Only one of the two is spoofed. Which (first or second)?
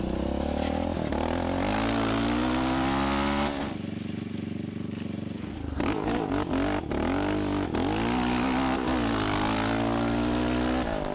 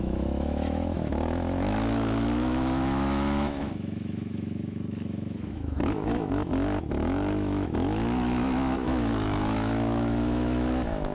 second